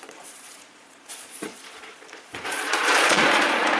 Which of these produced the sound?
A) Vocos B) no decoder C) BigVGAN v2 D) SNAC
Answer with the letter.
A